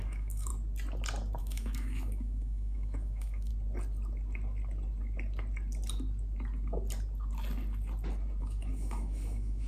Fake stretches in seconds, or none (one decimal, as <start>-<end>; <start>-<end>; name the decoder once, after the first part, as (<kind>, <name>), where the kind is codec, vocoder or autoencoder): 0.0-0.5 (autoencoder, DAC-VAE); 1.4-3.5; 8.4-9.7